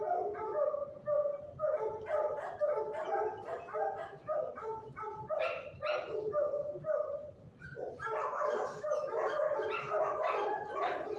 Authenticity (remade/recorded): recorded